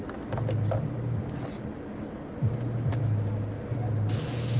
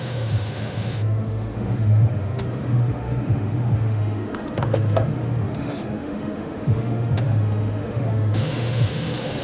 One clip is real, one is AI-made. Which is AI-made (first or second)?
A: second